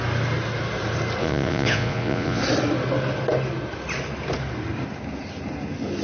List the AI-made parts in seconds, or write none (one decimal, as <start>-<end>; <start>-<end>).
1.2-2.4